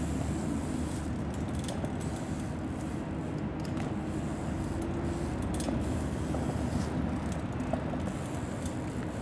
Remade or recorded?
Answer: recorded